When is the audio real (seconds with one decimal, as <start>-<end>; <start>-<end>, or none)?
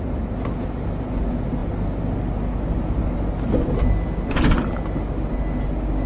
0.0-6.1